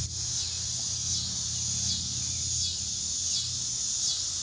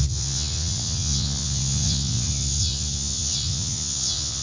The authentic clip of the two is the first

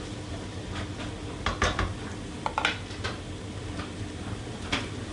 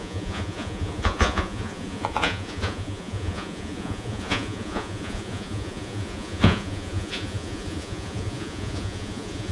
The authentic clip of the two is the first